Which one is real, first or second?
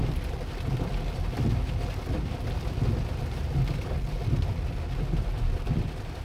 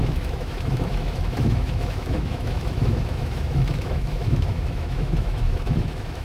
first